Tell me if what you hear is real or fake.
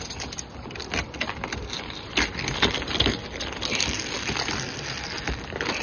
real